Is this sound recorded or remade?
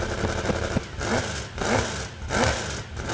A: recorded